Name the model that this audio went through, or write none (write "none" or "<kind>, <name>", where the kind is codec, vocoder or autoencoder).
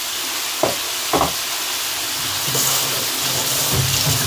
none